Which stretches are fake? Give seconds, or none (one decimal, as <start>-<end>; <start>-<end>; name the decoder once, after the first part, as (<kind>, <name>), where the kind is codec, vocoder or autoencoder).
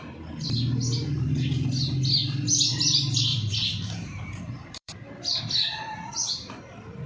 3.3-5.4 (vocoder, BigVGAN v2)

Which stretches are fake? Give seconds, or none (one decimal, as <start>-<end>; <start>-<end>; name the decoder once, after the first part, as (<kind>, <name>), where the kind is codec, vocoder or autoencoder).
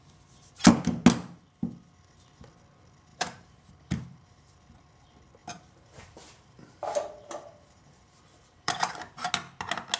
3.1-4.6 (vocoder, BigVGAN v2); 5.4-9.3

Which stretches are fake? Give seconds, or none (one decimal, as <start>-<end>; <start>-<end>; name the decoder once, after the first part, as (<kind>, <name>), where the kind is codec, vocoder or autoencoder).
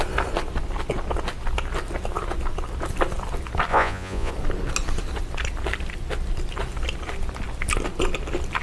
3.7-4.3 (vocoder, Vocos)